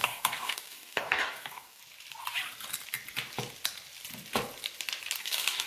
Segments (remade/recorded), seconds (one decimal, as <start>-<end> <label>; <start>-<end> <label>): 0.0-1.8 remade; 1.8-5.2 recorded; 5.2-5.7 remade